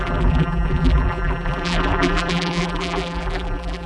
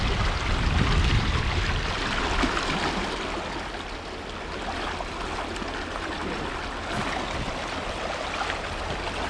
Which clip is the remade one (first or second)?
first